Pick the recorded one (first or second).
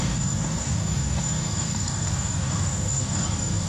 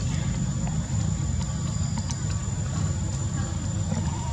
second